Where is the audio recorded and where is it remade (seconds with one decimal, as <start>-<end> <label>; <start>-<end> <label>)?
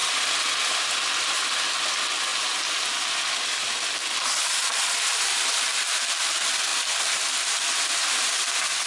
0.0-2.3 recorded; 2.3-3.8 remade; 3.8-4.7 recorded; 4.7-5.7 remade; 5.7-8.9 recorded